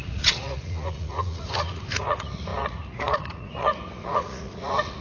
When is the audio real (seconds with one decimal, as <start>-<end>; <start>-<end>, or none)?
none